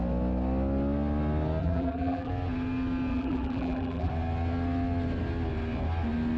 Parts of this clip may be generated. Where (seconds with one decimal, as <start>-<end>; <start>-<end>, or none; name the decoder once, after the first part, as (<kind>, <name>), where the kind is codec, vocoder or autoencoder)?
1.6-2.3 (vocoder, BigVGAN v2); 3.1-4.1